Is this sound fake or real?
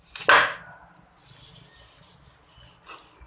real